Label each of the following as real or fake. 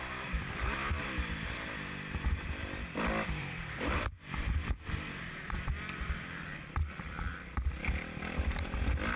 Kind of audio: fake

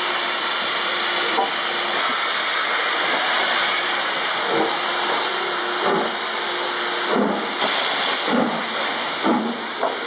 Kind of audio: real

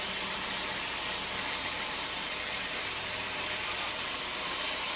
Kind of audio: fake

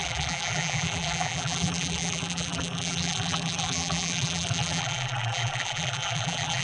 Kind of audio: fake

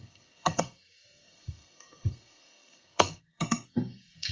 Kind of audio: fake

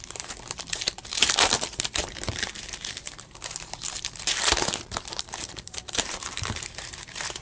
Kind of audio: fake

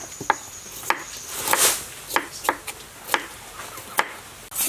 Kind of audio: real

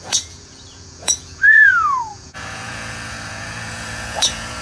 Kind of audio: fake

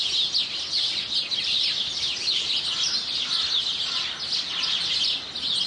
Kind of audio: real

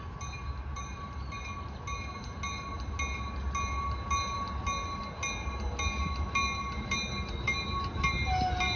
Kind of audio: real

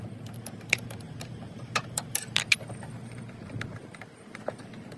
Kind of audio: fake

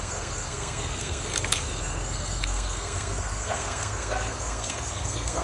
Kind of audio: fake